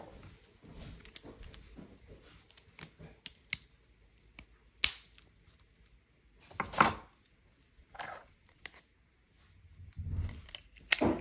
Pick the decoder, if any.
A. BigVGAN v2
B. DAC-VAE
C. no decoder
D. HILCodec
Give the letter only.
C